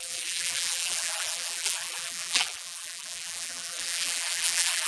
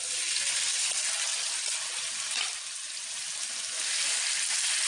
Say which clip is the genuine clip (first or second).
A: second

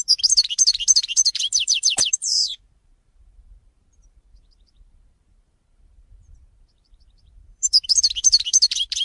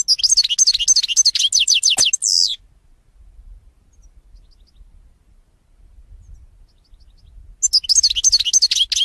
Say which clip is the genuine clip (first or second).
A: second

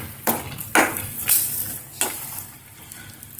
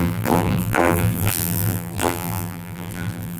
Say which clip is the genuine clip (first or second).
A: first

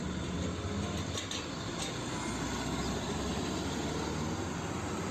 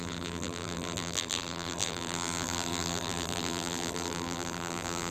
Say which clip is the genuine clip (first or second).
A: first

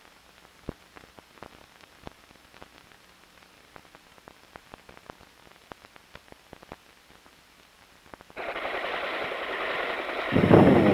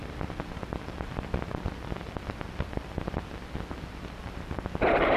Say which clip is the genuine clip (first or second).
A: first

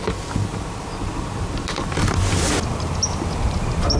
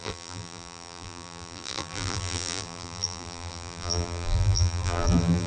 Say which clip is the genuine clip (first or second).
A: first